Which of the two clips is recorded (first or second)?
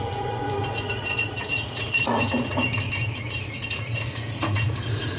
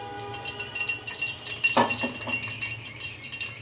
second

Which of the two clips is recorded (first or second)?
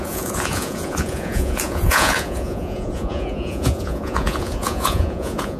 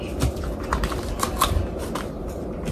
second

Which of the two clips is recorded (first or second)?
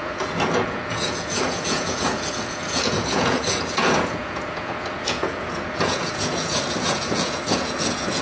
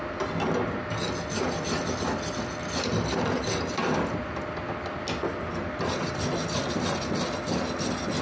second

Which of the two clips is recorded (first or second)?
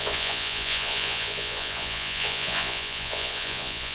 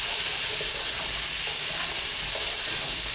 second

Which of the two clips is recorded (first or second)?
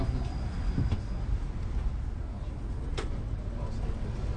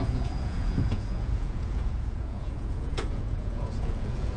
first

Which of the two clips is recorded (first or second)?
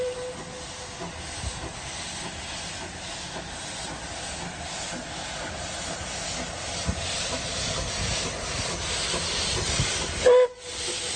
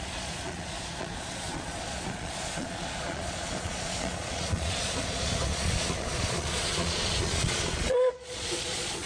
first